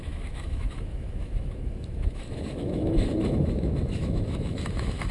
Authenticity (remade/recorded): remade